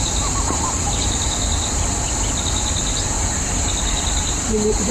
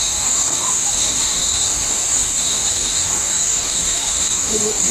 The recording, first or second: first